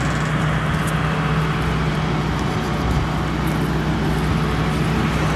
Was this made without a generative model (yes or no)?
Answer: yes